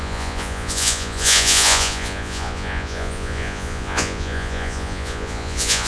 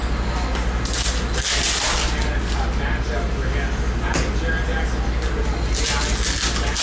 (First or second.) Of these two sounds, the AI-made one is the first